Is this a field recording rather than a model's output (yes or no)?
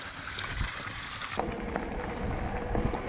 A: yes